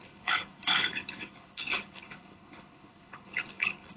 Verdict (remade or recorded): remade